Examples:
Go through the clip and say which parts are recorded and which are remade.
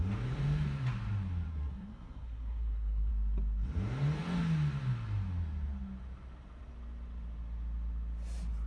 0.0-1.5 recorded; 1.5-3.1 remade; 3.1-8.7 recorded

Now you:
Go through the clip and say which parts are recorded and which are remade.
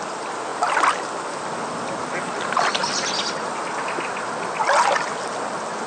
0.0-5.9 recorded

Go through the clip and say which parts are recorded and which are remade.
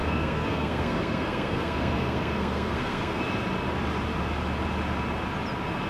0.0-3.2 remade; 3.2-5.9 recorded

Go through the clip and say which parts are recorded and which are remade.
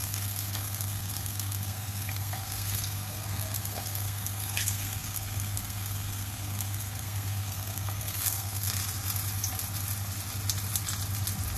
0.0-8.8 remade; 8.8-11.6 recorded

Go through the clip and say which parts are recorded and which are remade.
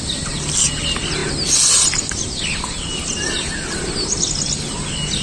0.0-5.2 recorded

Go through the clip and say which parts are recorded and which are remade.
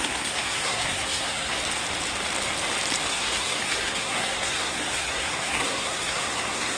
0.0-1.6 remade; 1.6-3.1 recorded; 3.1-6.8 remade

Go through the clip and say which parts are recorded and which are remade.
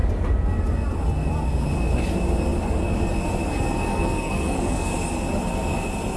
0.0-3.9 recorded; 3.9-4.9 remade; 4.9-6.2 recorded